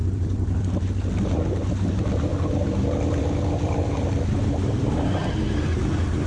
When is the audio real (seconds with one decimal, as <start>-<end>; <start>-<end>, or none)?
0.9-2.3; 5.3-6.3